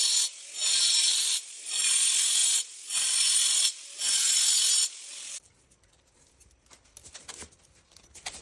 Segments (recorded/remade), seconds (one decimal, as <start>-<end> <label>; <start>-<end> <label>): 0.0-0.6 recorded; 0.6-1.8 remade; 1.8-8.4 recorded